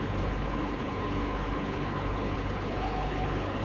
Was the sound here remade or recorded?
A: remade